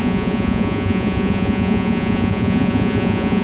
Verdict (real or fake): fake